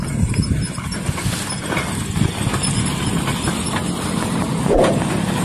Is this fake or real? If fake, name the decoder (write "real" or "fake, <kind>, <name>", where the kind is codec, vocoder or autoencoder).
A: real